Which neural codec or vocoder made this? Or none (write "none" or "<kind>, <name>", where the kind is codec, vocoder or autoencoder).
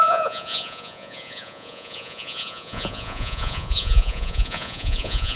vocoder, Vocos